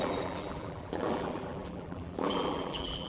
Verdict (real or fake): fake